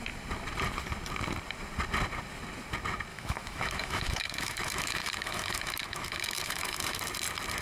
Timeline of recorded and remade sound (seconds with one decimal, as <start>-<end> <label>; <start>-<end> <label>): 0.0-3.1 recorded; 3.1-7.0 remade; 7.0-7.6 recorded